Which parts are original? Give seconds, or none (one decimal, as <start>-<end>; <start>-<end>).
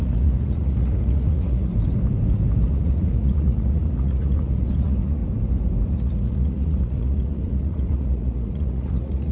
1.7-2.7; 5.2-5.9